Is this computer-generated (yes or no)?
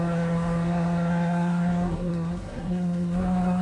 yes